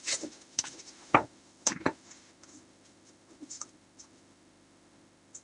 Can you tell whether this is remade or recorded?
remade